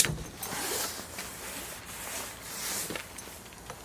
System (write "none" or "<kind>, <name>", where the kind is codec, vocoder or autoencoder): none